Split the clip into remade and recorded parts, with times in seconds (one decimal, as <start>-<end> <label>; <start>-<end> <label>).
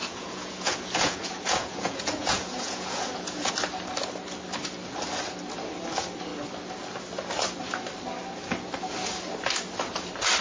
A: 0.0-3.5 remade; 3.5-10.4 recorded